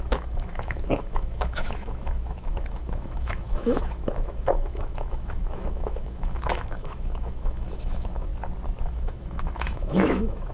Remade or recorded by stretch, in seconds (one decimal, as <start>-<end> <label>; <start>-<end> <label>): 0.0-8.3 remade; 8.3-8.8 recorded; 8.8-10.5 remade